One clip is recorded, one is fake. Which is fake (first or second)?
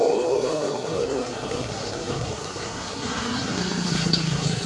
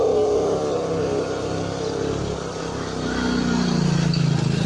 first